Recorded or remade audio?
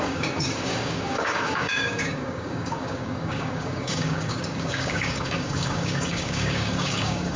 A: remade